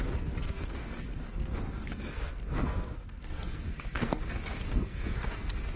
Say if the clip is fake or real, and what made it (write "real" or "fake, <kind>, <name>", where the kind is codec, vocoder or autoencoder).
fake, codec, SNAC